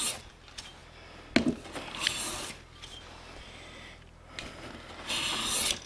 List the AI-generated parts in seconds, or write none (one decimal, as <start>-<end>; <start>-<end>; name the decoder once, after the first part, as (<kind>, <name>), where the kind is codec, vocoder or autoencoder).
none